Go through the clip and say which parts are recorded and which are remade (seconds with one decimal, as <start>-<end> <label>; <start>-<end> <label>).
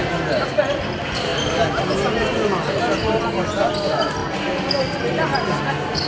0.0-6.1 recorded